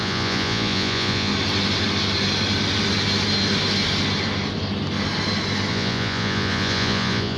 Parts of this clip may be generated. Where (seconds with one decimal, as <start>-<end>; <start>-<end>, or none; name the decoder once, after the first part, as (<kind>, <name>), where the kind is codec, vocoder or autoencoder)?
0.0-1.3 (vocoder, Vocos); 5.7-7.4